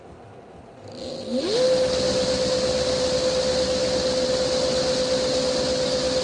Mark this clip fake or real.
real